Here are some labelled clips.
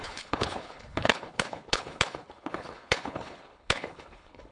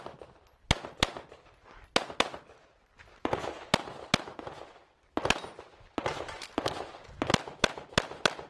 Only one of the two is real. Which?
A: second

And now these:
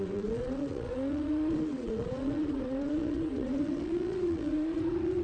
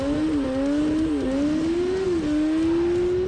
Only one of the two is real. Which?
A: second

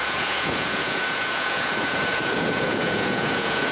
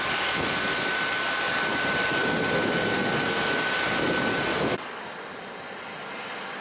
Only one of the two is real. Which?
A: second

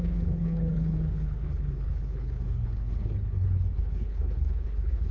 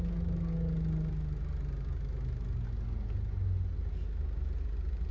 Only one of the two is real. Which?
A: second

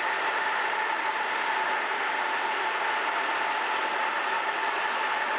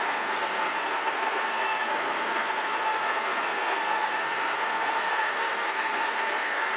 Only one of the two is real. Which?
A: first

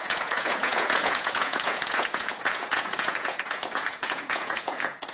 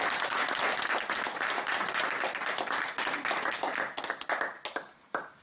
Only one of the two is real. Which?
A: second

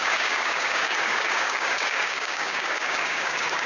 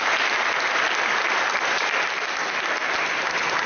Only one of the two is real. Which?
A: second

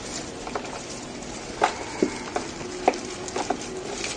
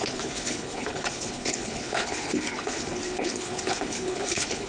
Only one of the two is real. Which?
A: first